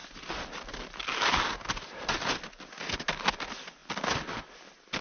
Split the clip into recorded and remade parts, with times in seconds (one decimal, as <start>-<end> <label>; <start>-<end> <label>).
0.0-5.0 recorded